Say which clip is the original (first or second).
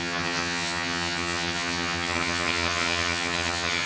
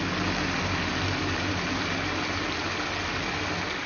second